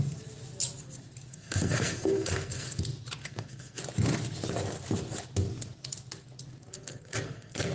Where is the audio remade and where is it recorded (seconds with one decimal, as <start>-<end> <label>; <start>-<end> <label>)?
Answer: 0.0-1.3 recorded; 1.3-2.8 remade; 2.8-3.2 recorded; 3.2-3.8 remade; 3.8-6.7 recorded; 6.7-7.7 remade